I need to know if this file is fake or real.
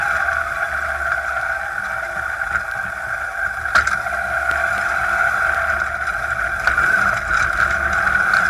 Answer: real